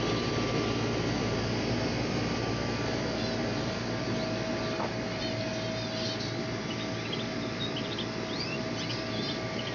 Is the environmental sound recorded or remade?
recorded